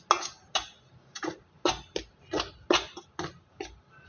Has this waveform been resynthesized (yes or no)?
no